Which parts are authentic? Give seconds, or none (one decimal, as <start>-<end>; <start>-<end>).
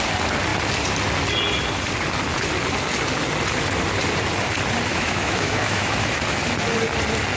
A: 0.0-4.9; 6.4-7.4